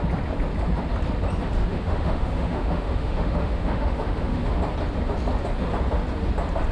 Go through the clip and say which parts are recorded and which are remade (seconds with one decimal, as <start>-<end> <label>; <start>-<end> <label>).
0.0-1.7 recorded; 1.7-4.5 remade; 4.5-6.7 recorded